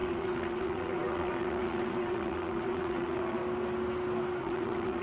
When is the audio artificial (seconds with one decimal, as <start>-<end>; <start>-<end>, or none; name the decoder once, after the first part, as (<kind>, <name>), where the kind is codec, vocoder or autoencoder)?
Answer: 0.0-3.4 (vocoder, WaveNeXt); 4.4-5.0